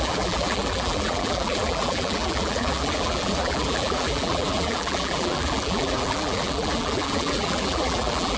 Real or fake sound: fake